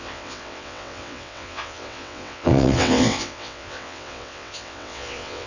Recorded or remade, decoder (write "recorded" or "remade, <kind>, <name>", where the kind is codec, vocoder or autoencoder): remade, vocoder, WaveNeXt